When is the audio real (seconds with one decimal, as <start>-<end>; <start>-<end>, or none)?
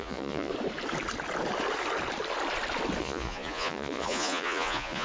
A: 0.5-3.0